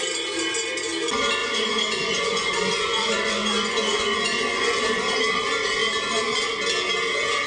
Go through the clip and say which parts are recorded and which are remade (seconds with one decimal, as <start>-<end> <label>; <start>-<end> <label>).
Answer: 0.0-1.4 recorded; 1.4-4.8 remade; 4.8-7.5 recorded